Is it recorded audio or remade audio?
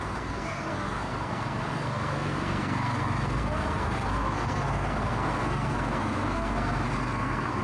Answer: remade